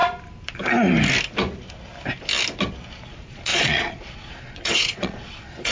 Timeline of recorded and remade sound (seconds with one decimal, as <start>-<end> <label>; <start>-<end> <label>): 0.0-3.1 recorded; 3.1-5.7 remade